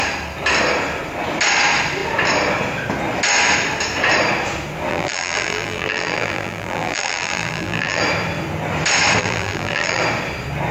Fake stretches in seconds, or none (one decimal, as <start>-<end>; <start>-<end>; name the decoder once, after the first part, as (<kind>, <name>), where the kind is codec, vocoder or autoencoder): 4.9-8.0 (vocoder, BigVGAN v2); 9.2-10.0